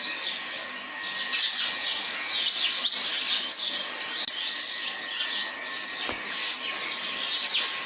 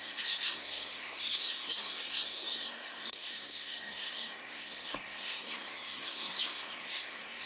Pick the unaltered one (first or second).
first